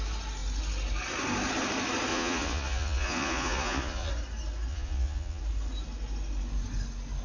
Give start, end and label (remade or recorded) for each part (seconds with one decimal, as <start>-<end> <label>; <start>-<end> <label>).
0.0-2.1 recorded; 2.1-4.1 remade; 4.1-4.7 recorded; 4.7-5.4 remade; 5.4-7.2 recorded